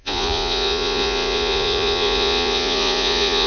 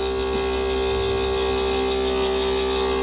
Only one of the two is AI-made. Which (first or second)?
first